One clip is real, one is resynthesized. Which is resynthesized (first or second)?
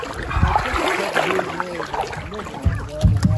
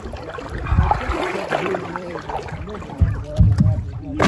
second